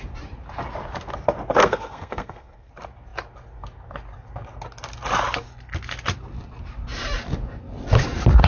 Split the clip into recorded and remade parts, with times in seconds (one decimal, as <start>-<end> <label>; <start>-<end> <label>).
0.0-1.6 recorded; 1.6-2.7 remade; 2.7-8.5 recorded